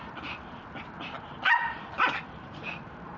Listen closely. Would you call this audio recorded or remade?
recorded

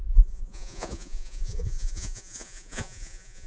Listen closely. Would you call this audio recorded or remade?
remade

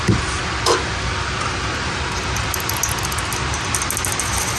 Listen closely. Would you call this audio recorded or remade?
recorded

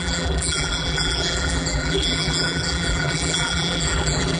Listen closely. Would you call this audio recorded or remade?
remade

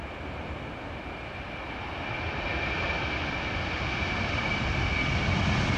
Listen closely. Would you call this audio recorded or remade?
recorded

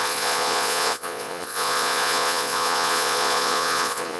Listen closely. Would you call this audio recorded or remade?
remade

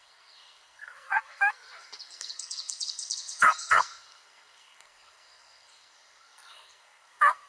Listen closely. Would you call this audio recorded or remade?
remade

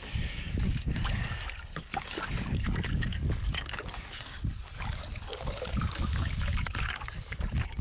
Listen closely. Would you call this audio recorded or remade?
remade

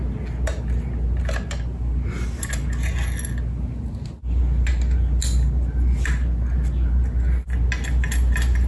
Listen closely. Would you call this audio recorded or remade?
recorded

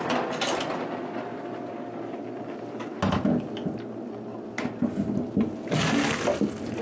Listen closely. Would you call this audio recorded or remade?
recorded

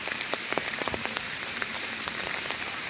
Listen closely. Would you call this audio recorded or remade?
remade